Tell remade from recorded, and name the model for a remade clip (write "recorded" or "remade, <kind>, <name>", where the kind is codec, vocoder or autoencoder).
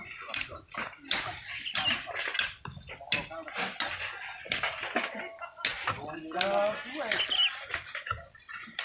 recorded